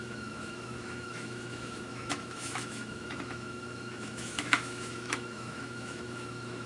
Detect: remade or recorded remade